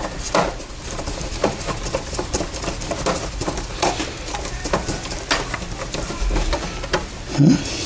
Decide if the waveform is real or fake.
real